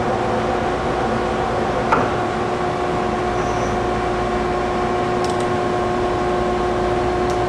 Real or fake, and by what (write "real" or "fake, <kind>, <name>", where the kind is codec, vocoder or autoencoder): real